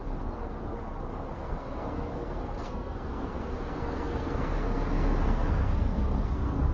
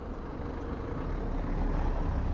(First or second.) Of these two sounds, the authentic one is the second